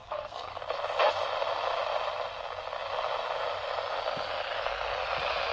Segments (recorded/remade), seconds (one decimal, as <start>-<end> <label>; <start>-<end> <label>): 0.0-0.6 remade; 0.6-5.5 recorded